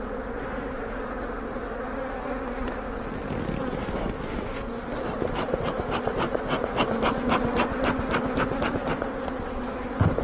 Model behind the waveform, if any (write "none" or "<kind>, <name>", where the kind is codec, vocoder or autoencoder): none